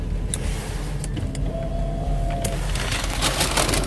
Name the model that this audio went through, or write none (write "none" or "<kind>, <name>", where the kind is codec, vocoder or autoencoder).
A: none